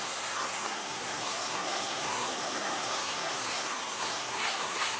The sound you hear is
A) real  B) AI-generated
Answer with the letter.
B